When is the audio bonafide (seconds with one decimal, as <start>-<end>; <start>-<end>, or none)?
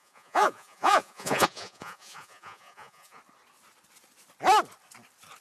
3.2-5.4